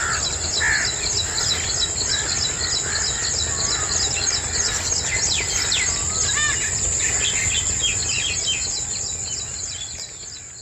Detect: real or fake real